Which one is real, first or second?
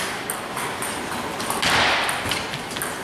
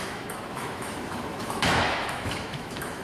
first